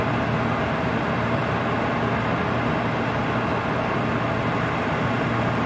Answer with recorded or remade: recorded